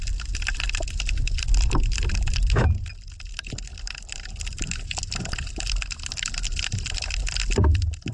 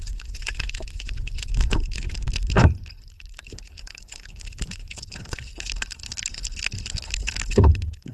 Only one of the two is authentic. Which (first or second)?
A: first